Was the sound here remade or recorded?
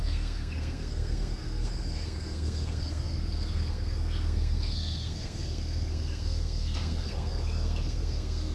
remade